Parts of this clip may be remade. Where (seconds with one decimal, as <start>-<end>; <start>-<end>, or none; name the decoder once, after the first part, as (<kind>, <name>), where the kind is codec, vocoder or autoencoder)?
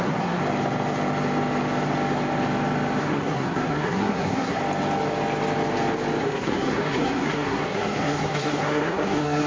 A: 0.0-0.4 (codec, SNAC); 3.0-4.6; 6.2-9.5